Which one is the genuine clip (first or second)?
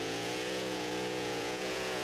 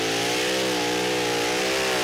second